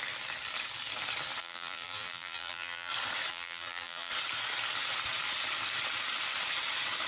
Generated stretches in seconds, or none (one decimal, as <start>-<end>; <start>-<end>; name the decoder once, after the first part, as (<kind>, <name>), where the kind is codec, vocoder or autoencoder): 1.4-2.9 (vocoder, BigVGAN v2); 3.3-4.1